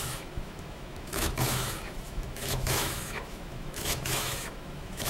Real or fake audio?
fake